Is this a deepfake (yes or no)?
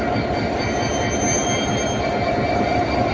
no